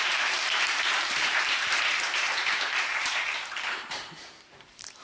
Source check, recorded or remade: remade